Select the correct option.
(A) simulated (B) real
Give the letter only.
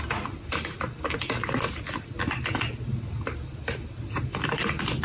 B